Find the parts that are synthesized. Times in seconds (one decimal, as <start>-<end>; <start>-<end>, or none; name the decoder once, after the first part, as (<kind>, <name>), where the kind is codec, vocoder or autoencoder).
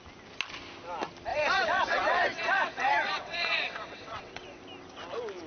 1.3-4.6 (vocoder, WaveNeXt)